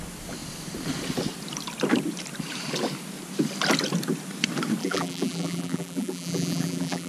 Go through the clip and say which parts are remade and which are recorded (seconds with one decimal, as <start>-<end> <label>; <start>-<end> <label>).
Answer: 0.0-4.8 recorded; 4.8-7.1 remade